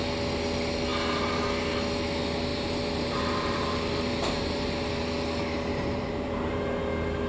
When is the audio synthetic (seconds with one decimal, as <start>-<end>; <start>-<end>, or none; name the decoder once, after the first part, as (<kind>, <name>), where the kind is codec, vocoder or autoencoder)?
2.5-4.9 (vocoder, BigVGAN v2); 5.7-6.6